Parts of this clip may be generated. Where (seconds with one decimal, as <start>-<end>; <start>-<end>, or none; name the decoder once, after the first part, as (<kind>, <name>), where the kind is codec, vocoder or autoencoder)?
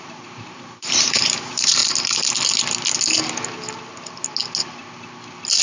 0.0-1.8 (vocoder, BigVGAN v2)